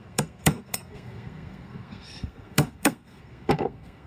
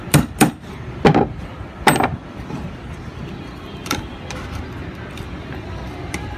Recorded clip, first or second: second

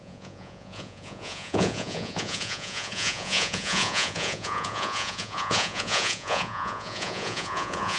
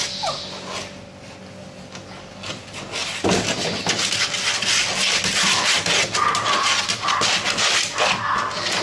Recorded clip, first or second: second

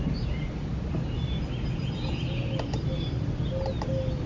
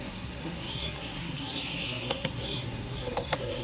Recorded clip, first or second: first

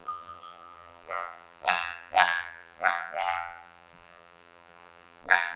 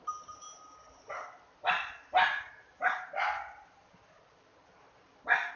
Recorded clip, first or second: second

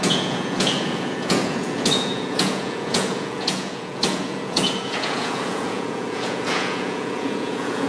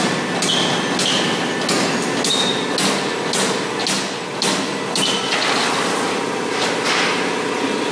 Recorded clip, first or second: second